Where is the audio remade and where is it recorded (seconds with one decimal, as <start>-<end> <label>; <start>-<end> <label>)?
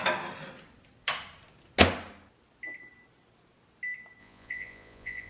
0.0-4.2 recorded; 4.2-5.3 remade